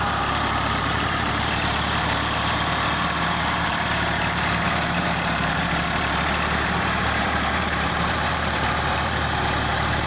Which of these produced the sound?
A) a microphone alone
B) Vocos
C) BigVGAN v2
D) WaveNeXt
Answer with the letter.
C